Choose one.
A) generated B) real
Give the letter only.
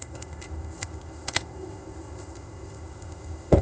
A